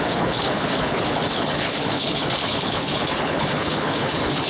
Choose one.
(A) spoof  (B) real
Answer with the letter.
A